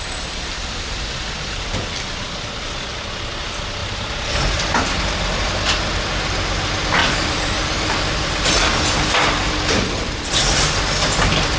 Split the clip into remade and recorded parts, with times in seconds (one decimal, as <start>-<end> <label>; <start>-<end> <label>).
0.0-3.8 recorded; 3.8-5.5 remade; 5.5-7.0 recorded; 7.0-9.5 remade; 9.5-11.6 recorded